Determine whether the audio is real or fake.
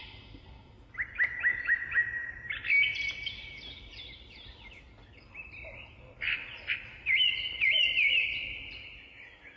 fake